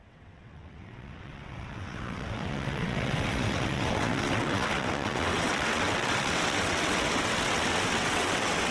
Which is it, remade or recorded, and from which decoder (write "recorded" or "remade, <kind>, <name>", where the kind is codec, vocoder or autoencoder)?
remade, vocoder, WaveNeXt